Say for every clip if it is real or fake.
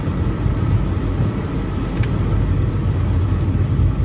real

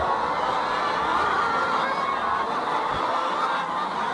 real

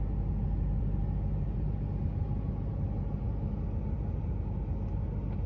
real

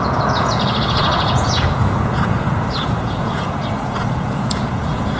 fake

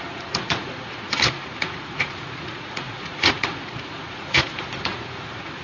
fake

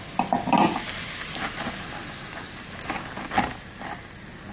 real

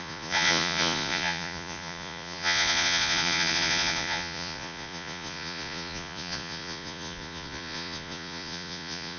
fake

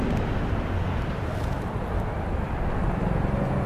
real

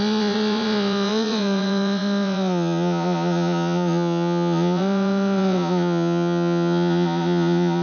fake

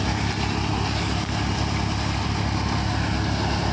real